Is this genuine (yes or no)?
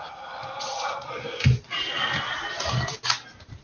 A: yes